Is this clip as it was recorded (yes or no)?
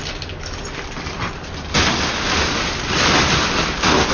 yes